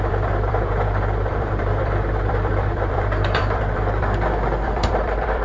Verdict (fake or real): fake